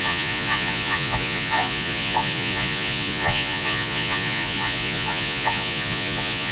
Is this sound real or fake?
fake